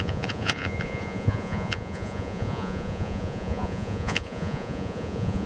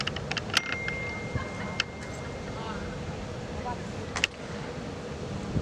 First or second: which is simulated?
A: first